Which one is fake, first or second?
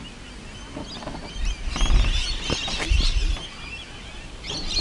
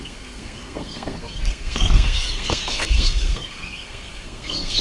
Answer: second